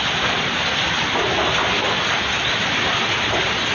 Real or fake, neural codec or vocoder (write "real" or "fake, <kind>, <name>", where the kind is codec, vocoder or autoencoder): real